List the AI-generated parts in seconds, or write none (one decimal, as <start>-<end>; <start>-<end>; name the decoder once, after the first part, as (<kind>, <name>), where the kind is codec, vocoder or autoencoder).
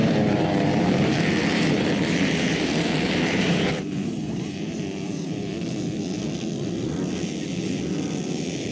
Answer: 0.0-5.5 (vocoder, BigVGAN v2)